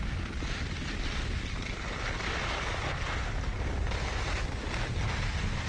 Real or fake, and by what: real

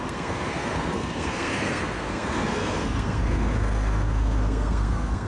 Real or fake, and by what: fake, codec, SNAC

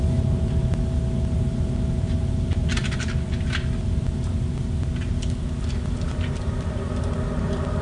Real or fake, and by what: real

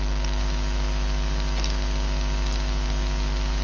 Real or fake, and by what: real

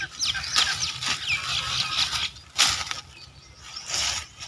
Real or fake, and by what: real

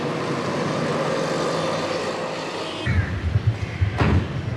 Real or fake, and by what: real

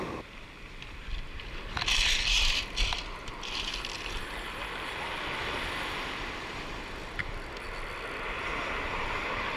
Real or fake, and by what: real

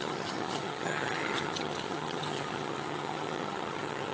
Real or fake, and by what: fake, vocoder, HiFi-GAN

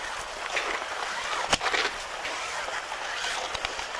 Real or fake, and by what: fake, vocoder, BigVGAN v2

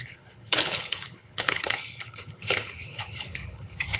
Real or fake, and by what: fake, codec, HILCodec